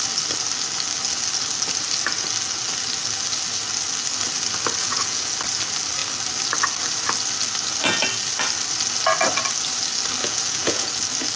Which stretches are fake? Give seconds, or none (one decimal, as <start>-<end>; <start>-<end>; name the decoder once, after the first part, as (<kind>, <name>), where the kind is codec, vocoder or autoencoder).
4.8-5.3 (vocoder, Vocos); 10.2-10.9